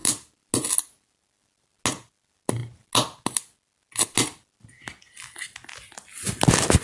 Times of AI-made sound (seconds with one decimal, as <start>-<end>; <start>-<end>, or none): none